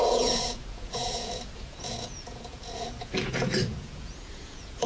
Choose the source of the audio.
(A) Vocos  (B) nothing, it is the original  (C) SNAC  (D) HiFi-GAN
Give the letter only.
A